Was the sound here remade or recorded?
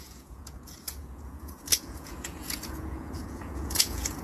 remade